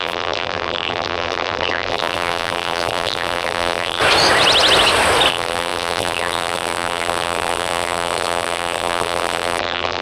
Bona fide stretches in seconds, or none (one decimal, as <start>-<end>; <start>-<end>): 4.0-5.3